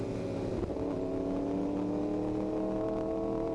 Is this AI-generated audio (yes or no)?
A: no